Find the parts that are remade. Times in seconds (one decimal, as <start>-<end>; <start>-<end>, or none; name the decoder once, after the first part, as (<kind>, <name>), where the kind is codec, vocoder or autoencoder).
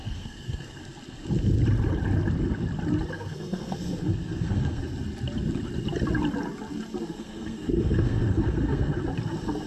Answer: 0.0-0.8 (codec, SNAC); 3.1-4.9; 7.0-9.0